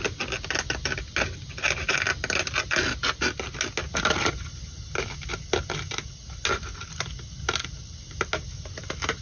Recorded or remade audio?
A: recorded